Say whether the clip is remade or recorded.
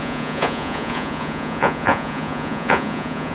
remade